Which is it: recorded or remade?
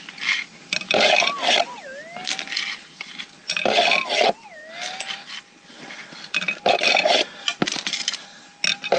recorded